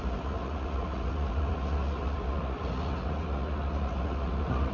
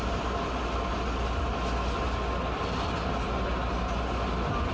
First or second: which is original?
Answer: second